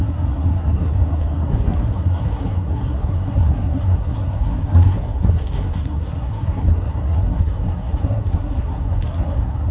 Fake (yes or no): yes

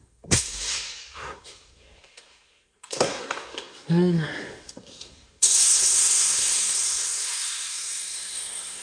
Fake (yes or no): yes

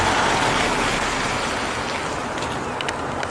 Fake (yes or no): no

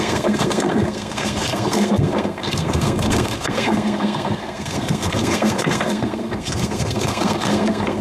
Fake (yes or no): yes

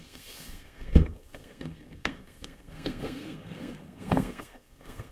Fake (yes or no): yes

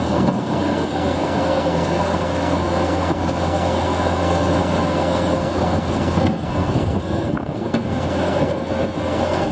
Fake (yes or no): yes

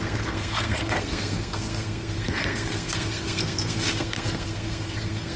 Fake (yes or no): yes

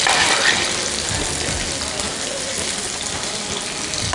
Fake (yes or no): no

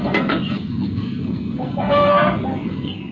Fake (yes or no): yes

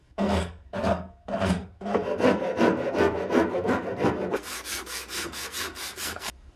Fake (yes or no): yes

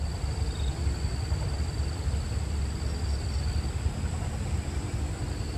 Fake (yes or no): no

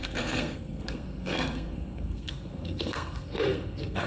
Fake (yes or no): yes